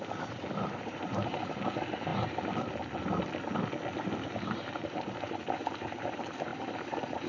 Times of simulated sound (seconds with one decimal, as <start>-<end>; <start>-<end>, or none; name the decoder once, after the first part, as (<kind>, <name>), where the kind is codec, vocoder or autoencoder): 0.0-2.1 (vocoder, BigVGAN v2); 4.3-7.3